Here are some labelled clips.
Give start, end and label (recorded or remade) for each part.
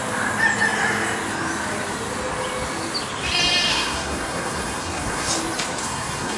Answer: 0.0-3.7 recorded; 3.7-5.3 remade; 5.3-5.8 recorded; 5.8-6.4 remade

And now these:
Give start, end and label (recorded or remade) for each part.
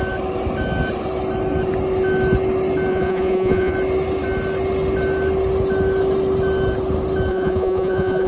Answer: 0.0-2.9 recorded; 2.9-3.7 remade; 3.7-7.3 recorded; 7.3-8.3 remade